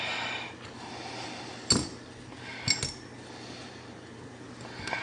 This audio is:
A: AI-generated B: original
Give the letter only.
B